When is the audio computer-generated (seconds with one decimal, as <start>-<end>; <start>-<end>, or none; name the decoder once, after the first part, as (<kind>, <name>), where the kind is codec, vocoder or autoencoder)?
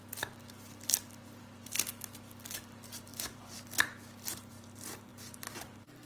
1.4-1.9 (vocoder, BigVGAN v2); 2.5-6.1